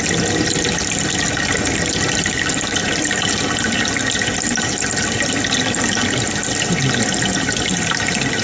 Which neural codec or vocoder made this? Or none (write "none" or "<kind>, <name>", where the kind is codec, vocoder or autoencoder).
none